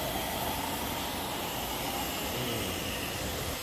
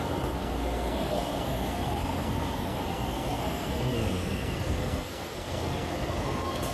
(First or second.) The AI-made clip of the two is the second